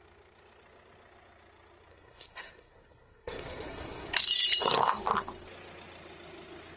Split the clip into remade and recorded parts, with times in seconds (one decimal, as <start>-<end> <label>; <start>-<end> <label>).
0.0-1.9 recorded; 1.9-4.1 remade; 4.1-6.8 recorded